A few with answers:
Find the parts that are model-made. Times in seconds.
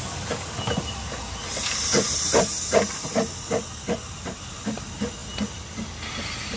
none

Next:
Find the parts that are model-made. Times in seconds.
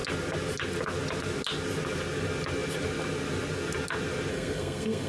4.3-5.1 (codec, SNAC)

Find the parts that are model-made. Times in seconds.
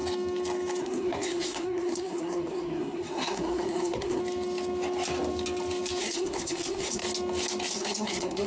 0.8-4.2 (codec, SNAC); 6.0-7.0; 7.7-8.5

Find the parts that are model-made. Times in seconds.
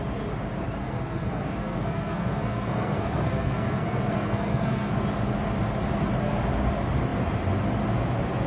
0.8-4.9 (codec, SNAC)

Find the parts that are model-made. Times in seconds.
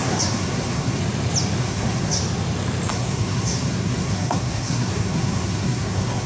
0.0-1.0 (codec, SNAC); 1.6-2.2; 2.9-6.3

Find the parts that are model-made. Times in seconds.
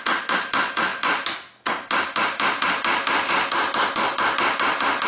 none